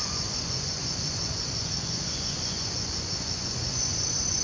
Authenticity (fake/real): fake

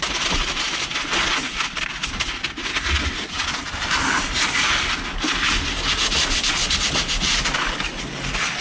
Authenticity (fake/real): real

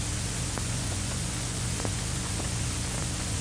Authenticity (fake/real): fake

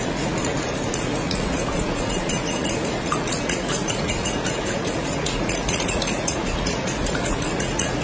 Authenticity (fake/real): fake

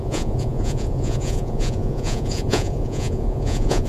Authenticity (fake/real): fake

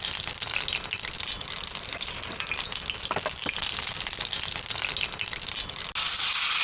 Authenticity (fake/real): real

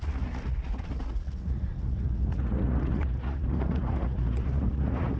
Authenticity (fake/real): fake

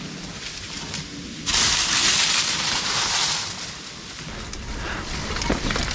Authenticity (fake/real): real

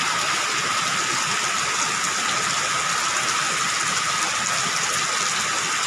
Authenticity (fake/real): real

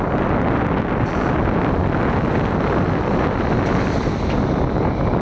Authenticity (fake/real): real